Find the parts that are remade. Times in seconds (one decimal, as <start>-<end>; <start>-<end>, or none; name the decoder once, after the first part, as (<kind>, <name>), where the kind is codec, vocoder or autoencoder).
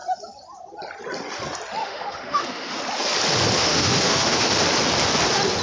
1.8-2.8 (autoencoder, DAC-VAE); 3.6-4.5